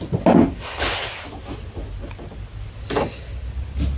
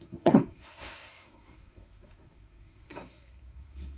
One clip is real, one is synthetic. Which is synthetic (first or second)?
second